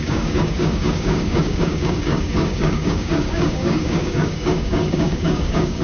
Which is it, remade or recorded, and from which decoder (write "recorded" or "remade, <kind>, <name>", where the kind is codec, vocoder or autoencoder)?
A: remade, codec, DAC